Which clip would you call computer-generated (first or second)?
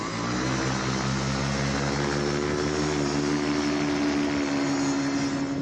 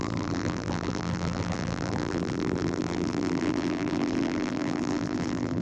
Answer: second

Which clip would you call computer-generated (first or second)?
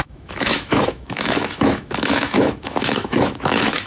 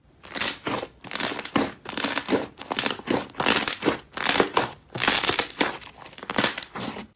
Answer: first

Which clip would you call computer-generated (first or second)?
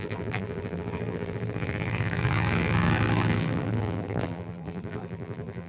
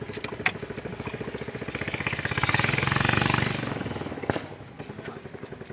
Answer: first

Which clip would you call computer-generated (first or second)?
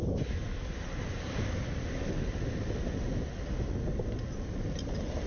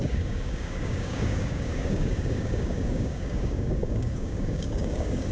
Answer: second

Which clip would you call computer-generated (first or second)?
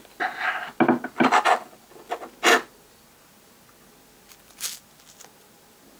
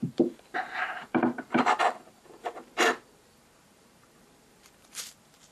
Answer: second